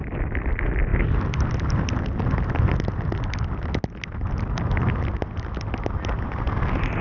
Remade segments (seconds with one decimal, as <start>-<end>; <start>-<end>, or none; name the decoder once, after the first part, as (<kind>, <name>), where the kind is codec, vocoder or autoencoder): none